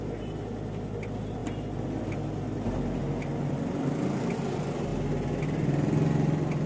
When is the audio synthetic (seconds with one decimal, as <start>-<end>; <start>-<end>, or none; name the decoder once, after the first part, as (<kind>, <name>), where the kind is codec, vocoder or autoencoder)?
none